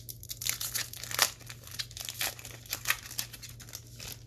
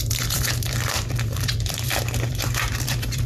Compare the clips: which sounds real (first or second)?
first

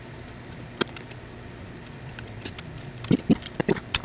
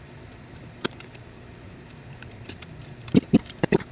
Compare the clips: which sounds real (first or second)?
first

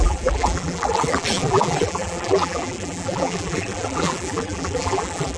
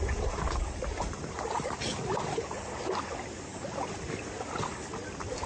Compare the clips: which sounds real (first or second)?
second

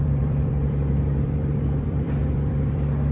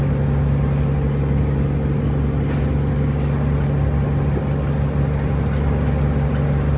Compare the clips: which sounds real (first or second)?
second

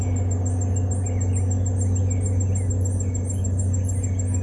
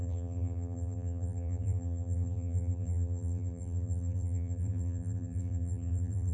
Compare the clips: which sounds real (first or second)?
first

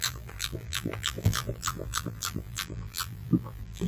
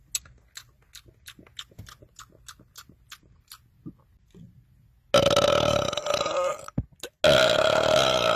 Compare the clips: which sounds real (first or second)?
second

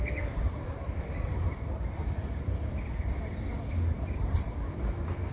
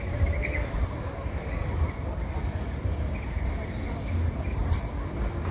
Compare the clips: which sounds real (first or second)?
second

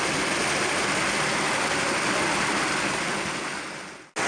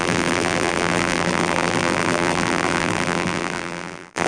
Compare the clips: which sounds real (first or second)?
first